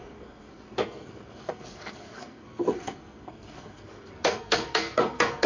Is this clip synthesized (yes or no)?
yes